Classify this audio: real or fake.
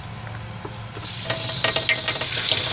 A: real